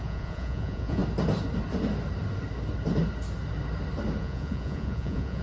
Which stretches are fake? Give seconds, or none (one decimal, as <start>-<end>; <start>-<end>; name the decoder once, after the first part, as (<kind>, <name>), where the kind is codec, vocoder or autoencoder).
0.0-1.0 (vocoder, Vocos); 4.2-5.4